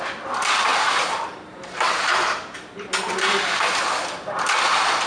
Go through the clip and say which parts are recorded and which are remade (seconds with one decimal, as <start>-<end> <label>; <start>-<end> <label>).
0.0-0.7 recorded; 0.7-3.8 remade; 3.8-5.1 recorded